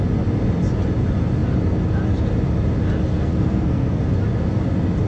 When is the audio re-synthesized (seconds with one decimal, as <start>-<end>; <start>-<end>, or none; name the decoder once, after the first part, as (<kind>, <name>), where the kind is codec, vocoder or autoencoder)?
3.1-4.0 (codec, SNAC)